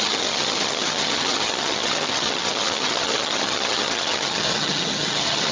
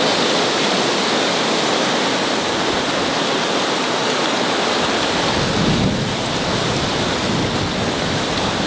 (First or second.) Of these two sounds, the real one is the second